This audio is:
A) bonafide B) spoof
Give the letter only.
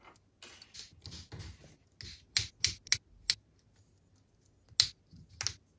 A